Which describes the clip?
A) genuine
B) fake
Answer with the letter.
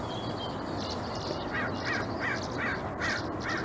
A